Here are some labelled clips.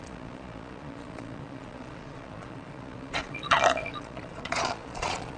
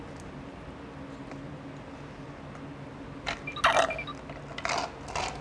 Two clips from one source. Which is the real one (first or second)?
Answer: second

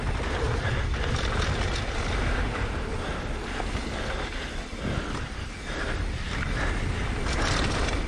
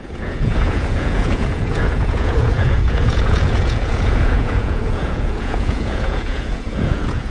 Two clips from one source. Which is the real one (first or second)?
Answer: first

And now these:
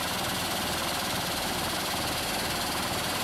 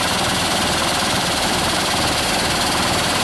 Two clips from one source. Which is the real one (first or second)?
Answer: first